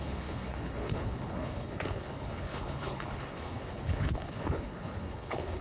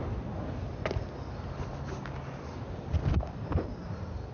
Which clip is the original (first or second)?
second